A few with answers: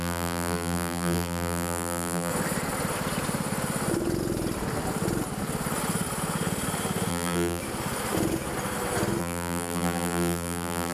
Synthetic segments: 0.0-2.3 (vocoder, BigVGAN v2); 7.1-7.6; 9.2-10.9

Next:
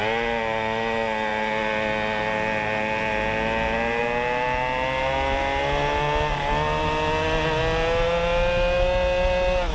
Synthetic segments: none

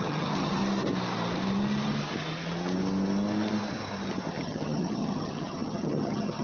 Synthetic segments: 0.0-0.6 (vocoder, HiFi-GAN); 4.4-6.4

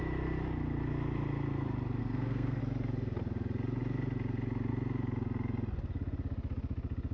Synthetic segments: 2.0-2.6 (codec, SNAC)

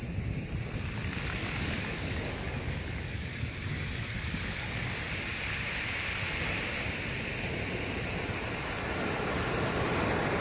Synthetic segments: 1.4-4.9 (codec, DAC)